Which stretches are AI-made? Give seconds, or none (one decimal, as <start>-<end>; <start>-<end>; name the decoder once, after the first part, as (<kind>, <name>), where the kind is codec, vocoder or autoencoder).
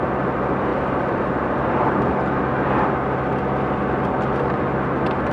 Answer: none